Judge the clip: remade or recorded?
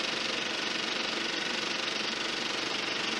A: recorded